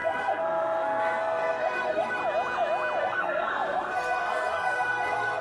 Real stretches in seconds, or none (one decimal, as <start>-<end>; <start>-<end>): 2.2-3.0